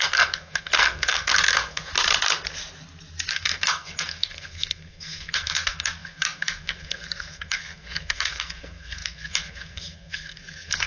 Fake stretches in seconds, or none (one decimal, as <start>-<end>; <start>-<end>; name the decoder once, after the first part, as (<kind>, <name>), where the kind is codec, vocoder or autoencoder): 0.0-1.9 (codec, SNAC); 3.3-10.9